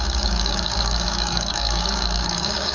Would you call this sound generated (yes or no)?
yes